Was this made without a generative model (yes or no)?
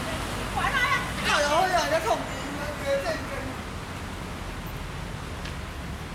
yes